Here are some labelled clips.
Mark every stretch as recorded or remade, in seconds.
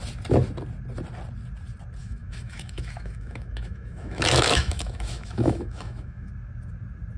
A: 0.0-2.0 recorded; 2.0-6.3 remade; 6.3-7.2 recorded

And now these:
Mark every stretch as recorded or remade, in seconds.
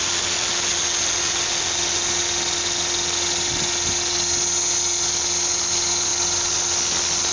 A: 0.0-7.3 recorded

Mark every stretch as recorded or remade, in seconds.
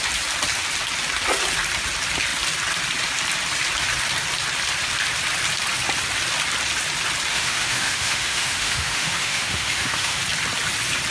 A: 0.0-7.3 recorded; 7.3-10.2 remade; 10.2-11.1 recorded